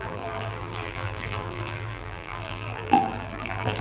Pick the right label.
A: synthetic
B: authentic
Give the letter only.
A